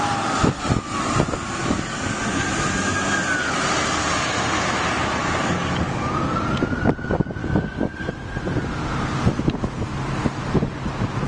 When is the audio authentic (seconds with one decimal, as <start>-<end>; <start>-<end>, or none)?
0.0-1.6; 2.5-5.2; 5.9-7.4; 8.1-11.3